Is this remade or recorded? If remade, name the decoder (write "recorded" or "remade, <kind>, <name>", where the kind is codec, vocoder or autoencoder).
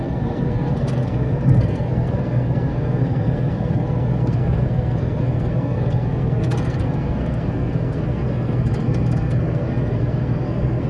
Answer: remade, codec, SNAC